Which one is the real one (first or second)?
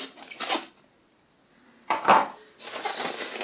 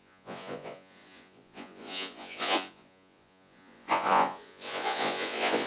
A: first